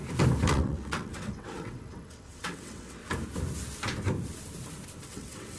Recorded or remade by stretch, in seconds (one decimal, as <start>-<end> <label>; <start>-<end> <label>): 0.0-0.5 recorded; 0.5-3.0 remade; 3.0-5.0 recorded; 5.0-5.6 remade